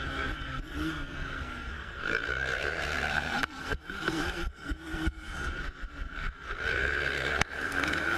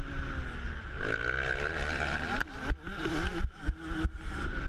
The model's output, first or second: first